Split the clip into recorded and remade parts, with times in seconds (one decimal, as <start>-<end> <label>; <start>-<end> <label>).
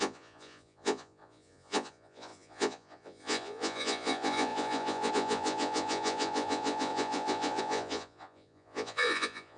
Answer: 0.0-9.6 remade